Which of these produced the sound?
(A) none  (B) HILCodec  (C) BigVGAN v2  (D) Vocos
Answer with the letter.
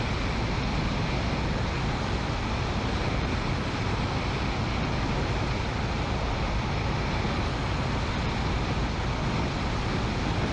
A